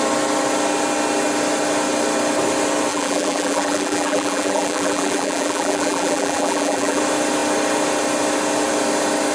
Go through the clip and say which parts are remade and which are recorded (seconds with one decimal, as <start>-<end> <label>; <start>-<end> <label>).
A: 0.0-2.9 recorded; 2.9-7.0 remade; 7.0-9.3 recorded